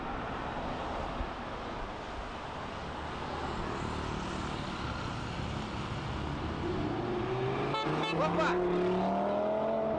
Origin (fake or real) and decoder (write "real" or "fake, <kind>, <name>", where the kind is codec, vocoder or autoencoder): real